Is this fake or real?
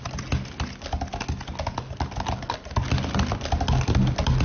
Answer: real